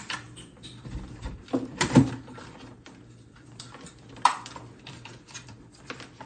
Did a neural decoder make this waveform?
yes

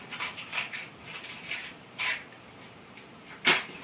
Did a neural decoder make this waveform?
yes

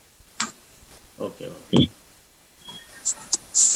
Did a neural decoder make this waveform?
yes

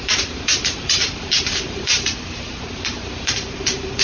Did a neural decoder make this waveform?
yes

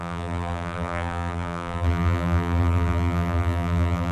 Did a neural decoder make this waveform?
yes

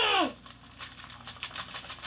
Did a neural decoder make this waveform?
no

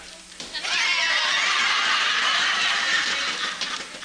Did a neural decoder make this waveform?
no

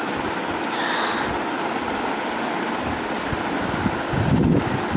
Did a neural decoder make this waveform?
no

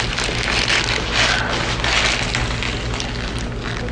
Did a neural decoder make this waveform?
no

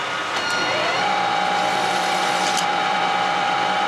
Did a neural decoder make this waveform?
yes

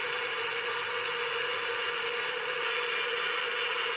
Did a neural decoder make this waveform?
no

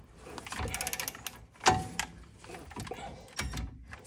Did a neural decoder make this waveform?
no